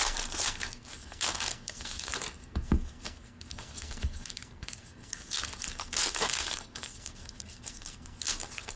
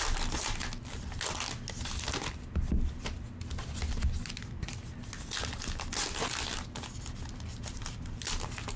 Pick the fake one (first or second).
first